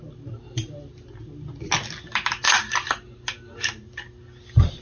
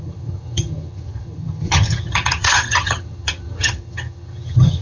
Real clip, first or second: first